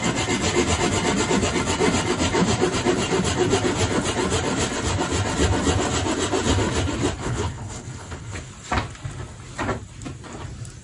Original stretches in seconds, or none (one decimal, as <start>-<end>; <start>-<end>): 0.0-7.2; 8.5-10.8

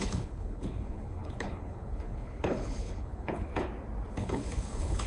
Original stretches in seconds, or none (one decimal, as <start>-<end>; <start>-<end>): 3.5-4.1

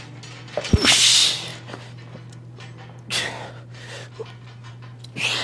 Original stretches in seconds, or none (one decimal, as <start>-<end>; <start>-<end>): 0.0-5.4

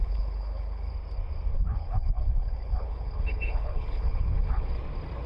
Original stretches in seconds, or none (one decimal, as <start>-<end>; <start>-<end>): 0.9-1.5; 4.7-5.3

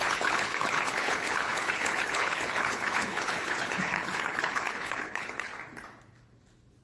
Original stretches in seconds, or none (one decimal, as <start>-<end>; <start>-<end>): 5.5-6.8

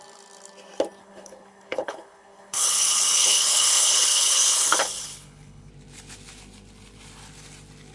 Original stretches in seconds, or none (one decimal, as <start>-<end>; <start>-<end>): 0.0-1.0; 5.7-7.9

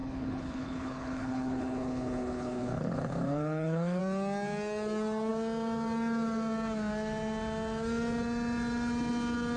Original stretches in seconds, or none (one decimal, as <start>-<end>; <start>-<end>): 4.0-9.6